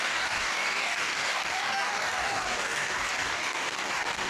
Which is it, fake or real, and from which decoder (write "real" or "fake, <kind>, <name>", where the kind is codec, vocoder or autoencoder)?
fake, codec, DAC